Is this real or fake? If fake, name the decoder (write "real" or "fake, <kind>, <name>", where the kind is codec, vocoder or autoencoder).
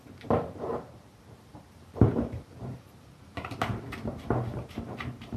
fake, vocoder, BigVGAN v2